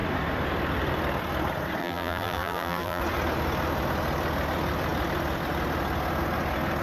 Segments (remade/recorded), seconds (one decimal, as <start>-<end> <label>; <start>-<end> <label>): 0.0-1.8 recorded; 1.8-3.0 remade; 3.0-6.8 recorded